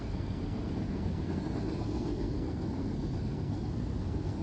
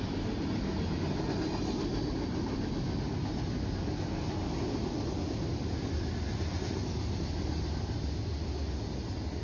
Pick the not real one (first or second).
first